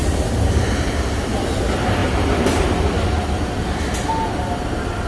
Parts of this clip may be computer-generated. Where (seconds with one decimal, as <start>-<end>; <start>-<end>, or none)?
0.0-0.6; 2.0-2.8